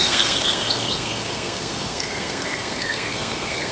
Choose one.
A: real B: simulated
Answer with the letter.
B